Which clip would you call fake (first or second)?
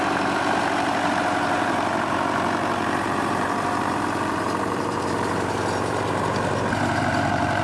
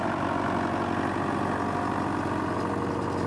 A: first